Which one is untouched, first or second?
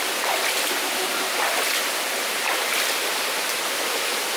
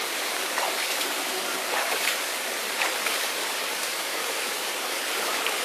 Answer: first